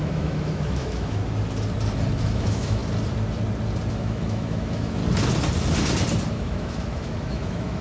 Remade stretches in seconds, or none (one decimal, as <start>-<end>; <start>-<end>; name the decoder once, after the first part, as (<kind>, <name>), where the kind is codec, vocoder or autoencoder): 0.0-1.2 (autoencoder, DAC-VAE); 2.2-2.8; 3.9-5.0; 6.3-7.8